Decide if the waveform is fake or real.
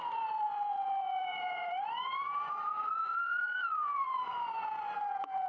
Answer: fake